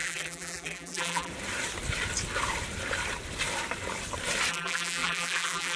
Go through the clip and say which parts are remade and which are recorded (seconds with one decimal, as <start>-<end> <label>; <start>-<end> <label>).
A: 0.0-1.3 remade; 1.3-4.5 recorded; 4.5-5.8 remade